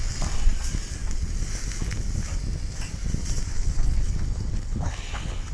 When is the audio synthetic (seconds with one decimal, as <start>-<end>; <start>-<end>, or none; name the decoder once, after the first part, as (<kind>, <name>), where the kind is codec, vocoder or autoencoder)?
3.5-5.5 (codec, HILCodec)